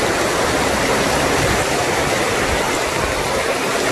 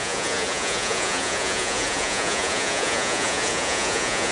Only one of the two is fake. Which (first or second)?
second